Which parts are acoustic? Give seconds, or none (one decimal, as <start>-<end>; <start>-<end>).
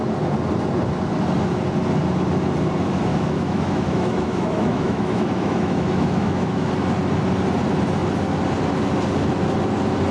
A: 0.0-3.1; 6.7-10.1